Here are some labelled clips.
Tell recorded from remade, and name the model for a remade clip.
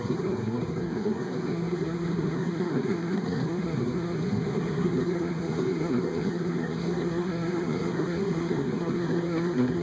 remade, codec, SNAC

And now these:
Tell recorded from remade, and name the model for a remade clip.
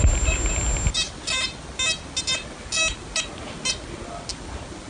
recorded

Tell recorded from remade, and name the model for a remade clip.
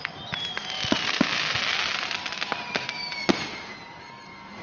recorded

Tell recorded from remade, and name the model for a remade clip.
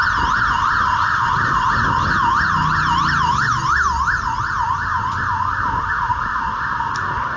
recorded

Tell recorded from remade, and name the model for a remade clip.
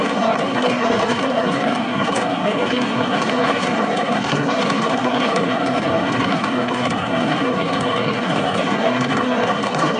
remade, codec, SNAC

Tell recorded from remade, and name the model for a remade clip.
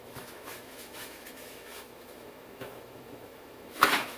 remade, autoencoder, DAC-VAE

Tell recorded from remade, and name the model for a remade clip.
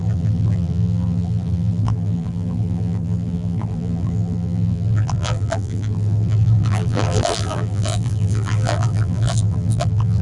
remade, vocoder, BigVGAN v2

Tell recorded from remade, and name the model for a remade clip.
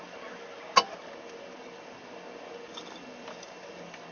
recorded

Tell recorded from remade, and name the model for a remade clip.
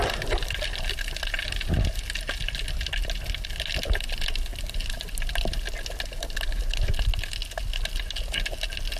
recorded